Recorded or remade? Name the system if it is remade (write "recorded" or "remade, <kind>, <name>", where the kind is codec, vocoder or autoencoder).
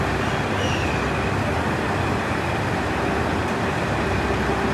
recorded